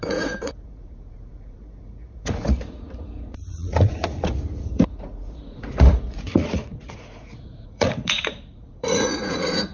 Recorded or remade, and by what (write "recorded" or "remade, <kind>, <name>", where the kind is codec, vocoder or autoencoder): remade, vocoder, Vocos